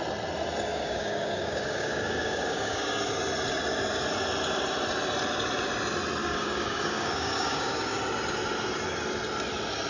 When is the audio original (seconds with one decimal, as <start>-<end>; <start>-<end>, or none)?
0.0-0.7; 3.0-6.2; 8.0-9.9